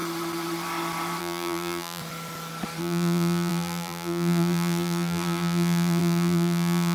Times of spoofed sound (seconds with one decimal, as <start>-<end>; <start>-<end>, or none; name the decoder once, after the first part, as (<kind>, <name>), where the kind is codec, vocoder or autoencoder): 1.2-2.0 (vocoder, BigVGAN v2); 2.8-6.9